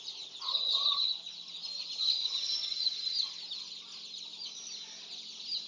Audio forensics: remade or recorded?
recorded